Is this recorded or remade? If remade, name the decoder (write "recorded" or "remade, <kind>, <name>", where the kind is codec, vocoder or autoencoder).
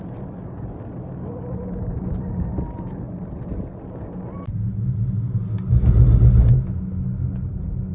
recorded